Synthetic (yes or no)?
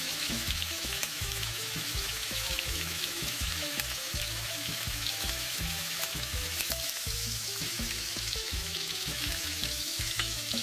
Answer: yes